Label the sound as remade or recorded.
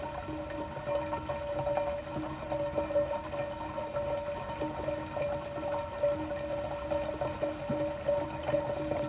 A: recorded